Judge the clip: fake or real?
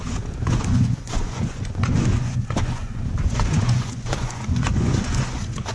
fake